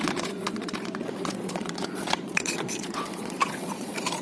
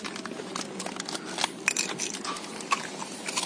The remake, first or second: first